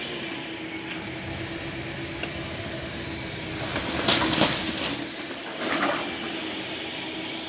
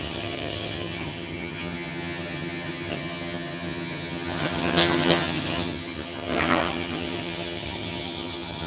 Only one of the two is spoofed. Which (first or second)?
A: second